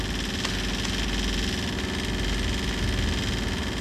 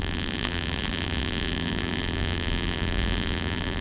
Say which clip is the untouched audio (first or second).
first